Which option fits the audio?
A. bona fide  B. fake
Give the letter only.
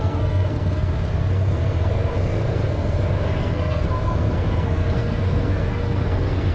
B